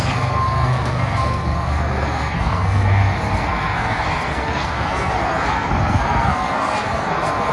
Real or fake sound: fake